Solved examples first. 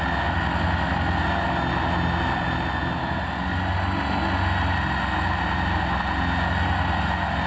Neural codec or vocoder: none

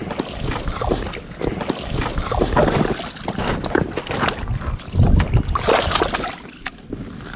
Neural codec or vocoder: none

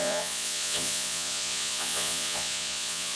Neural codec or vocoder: vocoder, Vocos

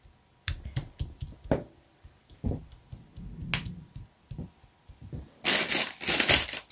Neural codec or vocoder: none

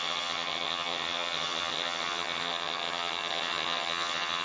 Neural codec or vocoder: vocoder, HiFi-GAN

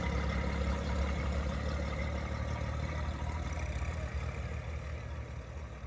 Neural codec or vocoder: none